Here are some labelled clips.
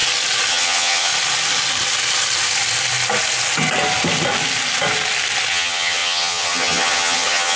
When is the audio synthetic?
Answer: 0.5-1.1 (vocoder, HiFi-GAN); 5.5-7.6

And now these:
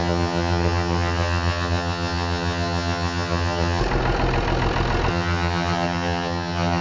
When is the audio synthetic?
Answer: 0.0-3.8 (vocoder, HiFi-GAN); 5.1-6.8

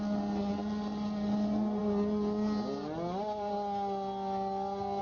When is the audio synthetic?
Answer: none

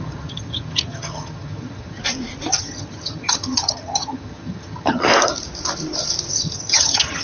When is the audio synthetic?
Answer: 0.0-2.0 (vocoder, HiFi-GAN); 2.6-5.1; 6.3-7.2

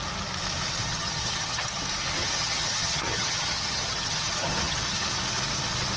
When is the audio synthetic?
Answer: 0.9-1.8 (vocoder, HiFi-GAN); 2.2-4.8

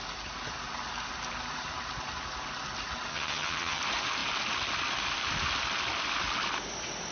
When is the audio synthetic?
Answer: 3.1-3.8 (vocoder, HiFi-GAN)

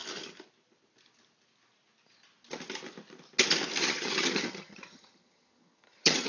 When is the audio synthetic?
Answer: 3.8-6.3 (vocoder, HiFi-GAN)

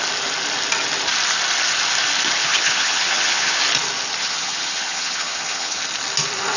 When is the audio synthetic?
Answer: 2.4-3.6 (vocoder, HiFi-GAN); 4.2-5.8